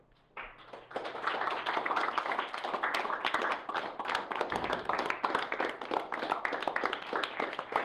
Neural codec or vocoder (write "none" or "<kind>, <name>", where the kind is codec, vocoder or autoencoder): none